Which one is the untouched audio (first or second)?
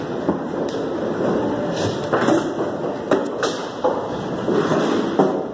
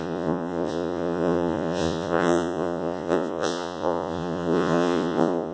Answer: first